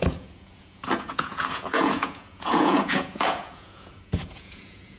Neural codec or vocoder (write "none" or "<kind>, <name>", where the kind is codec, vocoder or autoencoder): vocoder, Vocos